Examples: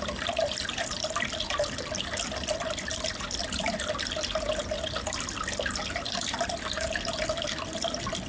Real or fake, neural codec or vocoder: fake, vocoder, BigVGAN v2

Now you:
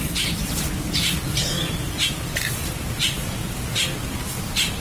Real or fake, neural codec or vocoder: real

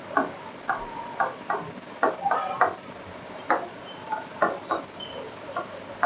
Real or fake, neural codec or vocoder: fake, vocoder, BigVGAN v2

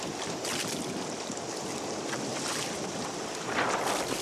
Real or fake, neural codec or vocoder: fake, vocoder, BigVGAN v2